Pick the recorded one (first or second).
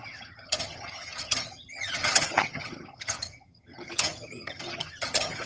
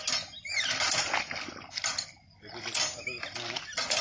second